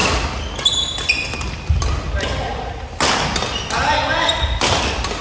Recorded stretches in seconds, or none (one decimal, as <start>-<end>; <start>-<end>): 0.0-5.2